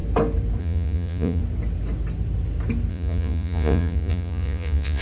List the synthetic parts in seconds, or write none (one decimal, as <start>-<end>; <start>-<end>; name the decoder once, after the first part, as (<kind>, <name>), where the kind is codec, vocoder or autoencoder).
0.6-1.4 (vocoder, Vocos); 2.9-5.0